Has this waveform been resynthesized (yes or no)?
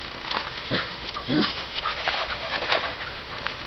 yes